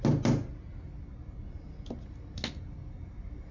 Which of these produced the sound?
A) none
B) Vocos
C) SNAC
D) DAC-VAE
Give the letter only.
A